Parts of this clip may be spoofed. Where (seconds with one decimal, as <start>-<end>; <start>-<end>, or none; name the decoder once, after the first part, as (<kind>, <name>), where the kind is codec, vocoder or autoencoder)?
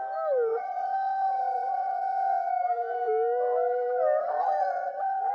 0.5-2.5 (vocoder, WaveNeXt); 4.2-5.3